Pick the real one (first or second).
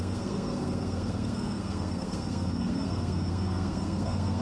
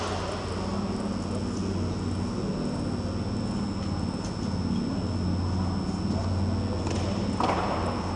second